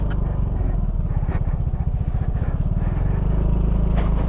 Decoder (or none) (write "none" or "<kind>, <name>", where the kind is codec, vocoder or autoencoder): none